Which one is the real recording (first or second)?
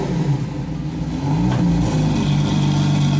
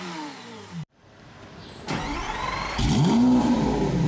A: first